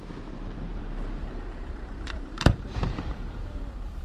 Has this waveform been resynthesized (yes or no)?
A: yes